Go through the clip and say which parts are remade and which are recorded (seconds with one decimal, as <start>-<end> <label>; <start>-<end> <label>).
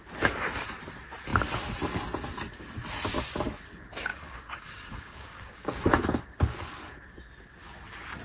0.0-4.1 recorded; 4.1-5.9 remade; 5.9-8.2 recorded